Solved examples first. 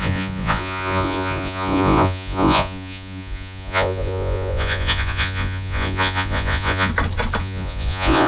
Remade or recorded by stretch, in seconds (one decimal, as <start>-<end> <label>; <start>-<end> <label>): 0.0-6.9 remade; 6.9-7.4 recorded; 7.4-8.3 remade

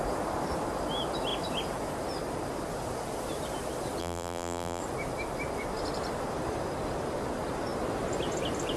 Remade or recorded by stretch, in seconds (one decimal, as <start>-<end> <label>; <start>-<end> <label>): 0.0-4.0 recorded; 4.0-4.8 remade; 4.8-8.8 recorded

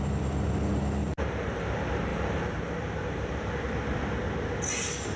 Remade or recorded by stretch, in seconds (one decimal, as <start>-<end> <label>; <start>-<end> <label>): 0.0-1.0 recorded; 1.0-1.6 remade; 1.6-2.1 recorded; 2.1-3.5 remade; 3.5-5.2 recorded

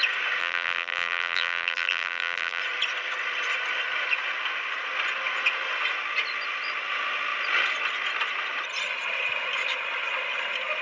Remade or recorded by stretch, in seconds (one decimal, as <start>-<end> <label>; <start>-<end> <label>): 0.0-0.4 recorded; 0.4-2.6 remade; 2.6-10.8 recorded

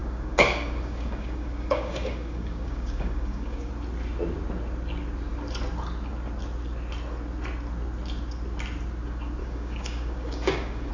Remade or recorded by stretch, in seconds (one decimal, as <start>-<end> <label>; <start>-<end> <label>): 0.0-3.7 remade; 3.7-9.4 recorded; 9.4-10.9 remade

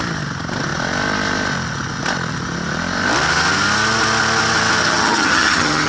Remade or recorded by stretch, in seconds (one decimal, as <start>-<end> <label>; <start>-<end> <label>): 0.0-4.8 recorded; 4.8-5.9 remade